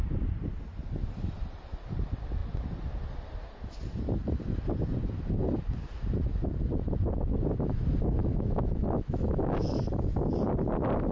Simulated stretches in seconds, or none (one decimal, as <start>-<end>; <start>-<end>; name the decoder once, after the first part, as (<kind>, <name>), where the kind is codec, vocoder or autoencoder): 8.2-9.8 (autoencoder, DAC-VAE)